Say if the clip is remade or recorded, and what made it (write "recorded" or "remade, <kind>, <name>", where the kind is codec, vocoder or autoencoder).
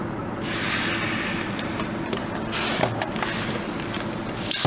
recorded